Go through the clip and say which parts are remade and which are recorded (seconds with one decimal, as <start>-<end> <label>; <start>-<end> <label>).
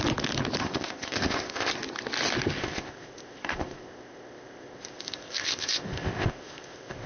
0.0-0.6 recorded; 0.6-1.7 remade; 1.7-2.6 recorded; 2.6-7.1 remade